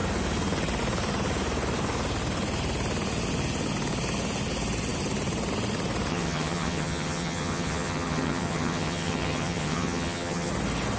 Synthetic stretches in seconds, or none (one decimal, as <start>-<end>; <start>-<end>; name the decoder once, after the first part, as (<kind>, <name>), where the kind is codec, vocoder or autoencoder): 6.1-10.5 (vocoder, HiFi-GAN)